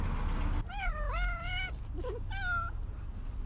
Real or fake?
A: real